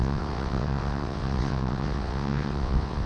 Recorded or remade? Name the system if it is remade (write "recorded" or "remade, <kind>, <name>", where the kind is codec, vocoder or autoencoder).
remade, vocoder, WaveNeXt